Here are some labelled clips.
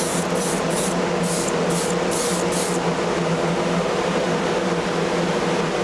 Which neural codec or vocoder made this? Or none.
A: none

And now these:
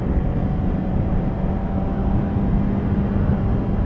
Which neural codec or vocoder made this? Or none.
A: none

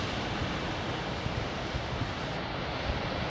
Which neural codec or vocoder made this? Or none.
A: none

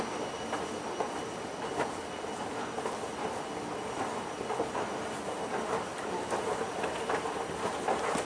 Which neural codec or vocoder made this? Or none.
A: none